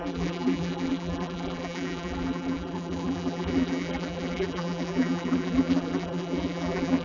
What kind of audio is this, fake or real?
fake